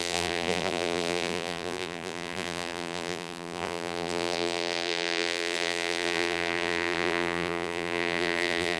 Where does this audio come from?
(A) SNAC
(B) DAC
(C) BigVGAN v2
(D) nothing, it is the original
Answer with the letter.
C